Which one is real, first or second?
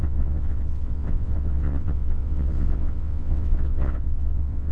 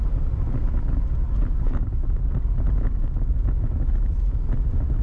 second